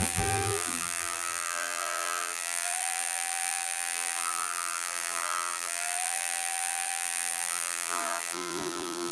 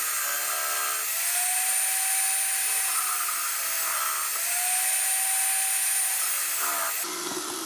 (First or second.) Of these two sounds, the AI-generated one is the first